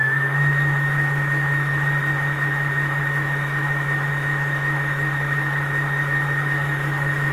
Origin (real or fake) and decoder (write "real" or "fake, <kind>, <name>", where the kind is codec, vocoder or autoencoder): fake, autoencoder, DAC-VAE